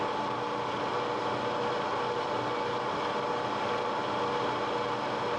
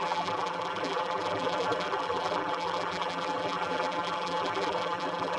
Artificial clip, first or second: second